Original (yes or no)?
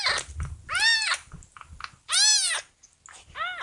yes